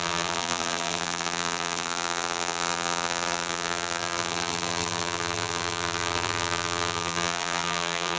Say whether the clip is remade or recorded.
remade